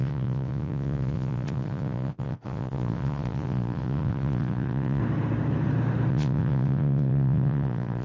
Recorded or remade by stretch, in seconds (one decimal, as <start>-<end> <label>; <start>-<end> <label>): 0.0-5.0 remade; 5.0-6.1 recorded; 6.1-8.0 remade